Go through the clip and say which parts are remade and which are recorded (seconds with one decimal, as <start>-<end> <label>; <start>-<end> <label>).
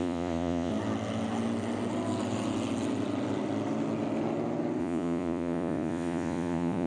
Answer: 0.0-0.7 remade; 0.7-4.8 recorded; 4.8-6.9 remade